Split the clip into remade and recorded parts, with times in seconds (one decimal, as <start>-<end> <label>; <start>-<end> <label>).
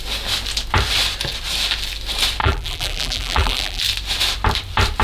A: 0.0-2.4 recorded; 2.4-3.8 remade; 3.8-5.0 recorded